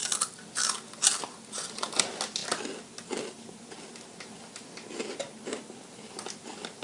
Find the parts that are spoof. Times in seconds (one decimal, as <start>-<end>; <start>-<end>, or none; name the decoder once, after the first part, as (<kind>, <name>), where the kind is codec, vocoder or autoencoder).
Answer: none